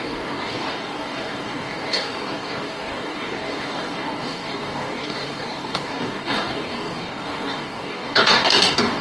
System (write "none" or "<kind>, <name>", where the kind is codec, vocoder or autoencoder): codec, DAC